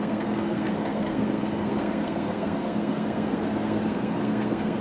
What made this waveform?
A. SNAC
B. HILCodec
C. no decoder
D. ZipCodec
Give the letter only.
A